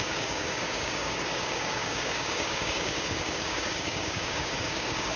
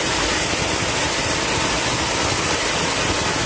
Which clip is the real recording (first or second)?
second